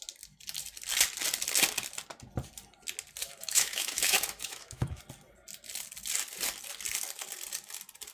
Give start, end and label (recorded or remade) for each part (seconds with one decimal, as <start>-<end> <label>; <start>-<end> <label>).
0.0-3.2 recorded; 3.2-5.0 remade; 5.0-8.1 recorded